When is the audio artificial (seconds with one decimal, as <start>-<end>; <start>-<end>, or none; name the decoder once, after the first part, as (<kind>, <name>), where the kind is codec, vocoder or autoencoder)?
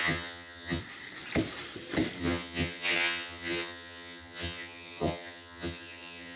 0.0-0.8 (vocoder, HiFi-GAN); 2.2-6.4